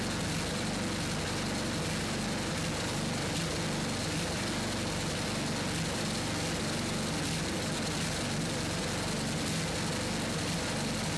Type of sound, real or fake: real